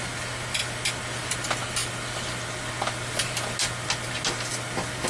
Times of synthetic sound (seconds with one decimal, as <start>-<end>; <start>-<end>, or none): none